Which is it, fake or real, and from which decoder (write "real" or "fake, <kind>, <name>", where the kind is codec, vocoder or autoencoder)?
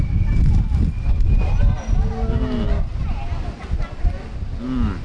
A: real